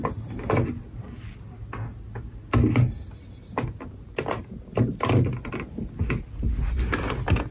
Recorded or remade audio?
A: recorded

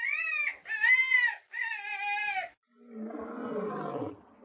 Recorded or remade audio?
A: recorded